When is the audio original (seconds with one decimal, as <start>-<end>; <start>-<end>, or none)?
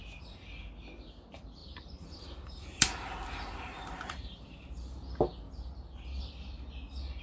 0.0-1.6; 5.1-7.2